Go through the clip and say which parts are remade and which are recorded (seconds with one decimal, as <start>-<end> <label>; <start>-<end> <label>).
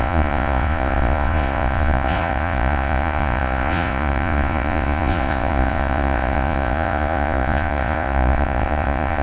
0.0-9.2 remade